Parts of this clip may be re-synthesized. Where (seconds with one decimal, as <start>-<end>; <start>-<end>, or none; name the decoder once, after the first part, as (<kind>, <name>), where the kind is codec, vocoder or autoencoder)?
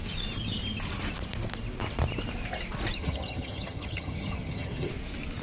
3.0-4.9 (vocoder, HiFi-GAN)